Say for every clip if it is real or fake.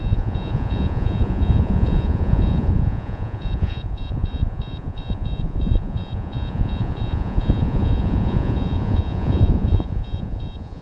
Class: fake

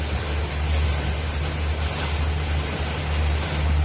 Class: real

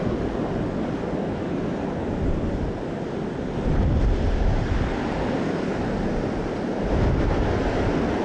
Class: real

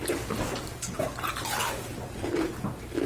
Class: real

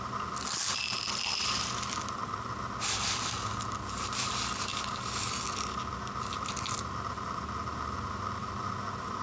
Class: real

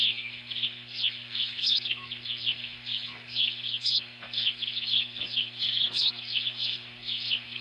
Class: fake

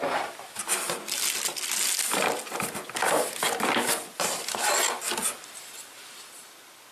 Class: real